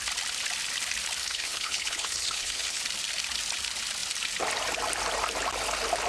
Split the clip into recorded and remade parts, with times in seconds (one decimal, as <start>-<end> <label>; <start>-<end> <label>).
0.0-1.2 recorded; 1.2-2.8 remade; 2.8-6.1 recorded

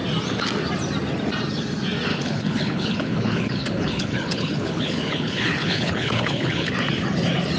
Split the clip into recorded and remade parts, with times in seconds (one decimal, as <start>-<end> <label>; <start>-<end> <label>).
0.0-2.1 recorded; 2.1-6.7 remade; 6.7-7.6 recorded

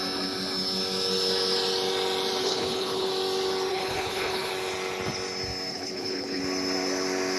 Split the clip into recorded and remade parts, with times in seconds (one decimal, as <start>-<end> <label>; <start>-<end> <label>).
0.0-2.4 recorded; 2.4-3.1 remade; 3.1-3.7 recorded; 3.7-4.5 remade; 4.5-5.7 recorded; 5.7-6.4 remade; 6.4-7.4 recorded

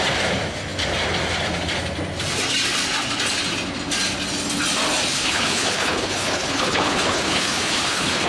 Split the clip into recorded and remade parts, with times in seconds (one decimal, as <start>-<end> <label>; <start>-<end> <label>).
0.0-5.1 recorded; 5.1-8.3 remade

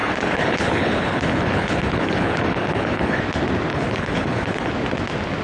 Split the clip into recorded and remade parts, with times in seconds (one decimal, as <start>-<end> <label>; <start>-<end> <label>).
0.0-3.2 remade; 3.2-3.7 recorded; 3.7-4.7 remade; 4.7-5.4 recorded

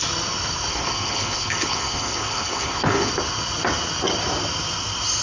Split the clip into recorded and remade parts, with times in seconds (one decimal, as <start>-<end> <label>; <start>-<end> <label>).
0.0-0.7 recorded; 0.7-3.1 remade; 3.1-5.2 recorded

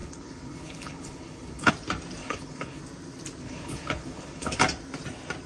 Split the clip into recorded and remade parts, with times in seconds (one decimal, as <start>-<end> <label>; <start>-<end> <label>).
0.0-1.7 remade; 1.7-2.2 recorded; 2.2-2.8 remade; 2.8-3.4 recorded; 3.4-4.6 remade; 4.6-5.5 recorded